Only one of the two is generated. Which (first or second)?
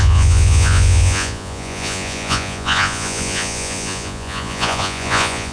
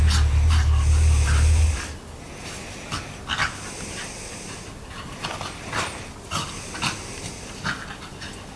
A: first